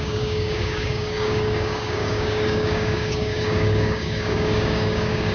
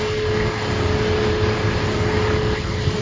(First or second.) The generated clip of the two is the first